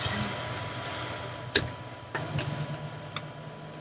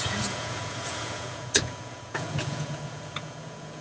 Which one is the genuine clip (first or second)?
first